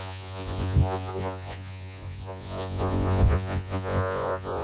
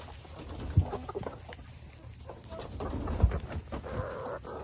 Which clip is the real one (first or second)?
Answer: second